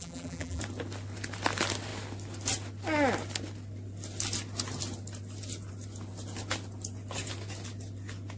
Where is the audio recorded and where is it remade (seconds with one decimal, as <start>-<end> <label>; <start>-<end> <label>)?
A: 0.0-0.6 remade; 0.6-8.4 recorded